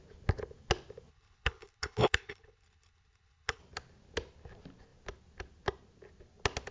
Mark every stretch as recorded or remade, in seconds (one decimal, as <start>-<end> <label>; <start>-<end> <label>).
0.0-1.1 recorded; 1.1-3.6 remade; 3.6-6.7 recorded

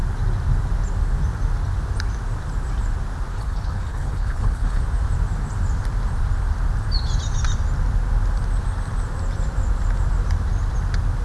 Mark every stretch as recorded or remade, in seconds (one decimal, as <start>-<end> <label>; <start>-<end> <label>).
0.0-3.3 recorded; 3.3-4.8 remade; 4.8-11.2 recorded